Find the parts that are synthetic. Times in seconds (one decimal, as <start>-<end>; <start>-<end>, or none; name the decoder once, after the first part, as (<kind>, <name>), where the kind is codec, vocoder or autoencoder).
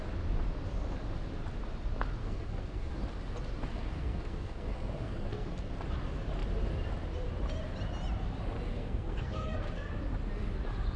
2.2-2.9 (codec, SNAC); 3.7-5.7; 8.7-9.9